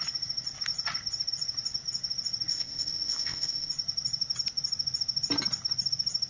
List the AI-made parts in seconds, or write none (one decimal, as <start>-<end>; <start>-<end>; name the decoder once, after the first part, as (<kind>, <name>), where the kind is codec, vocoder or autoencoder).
2.5-3.7 (codec, ZipCodec)